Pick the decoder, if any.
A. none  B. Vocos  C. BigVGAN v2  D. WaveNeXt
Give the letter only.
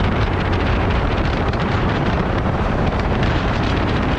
C